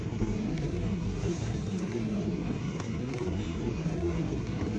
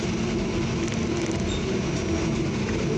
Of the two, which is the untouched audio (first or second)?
second